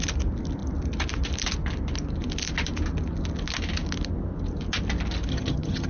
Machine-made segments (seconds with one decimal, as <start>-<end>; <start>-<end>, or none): 5.3-5.9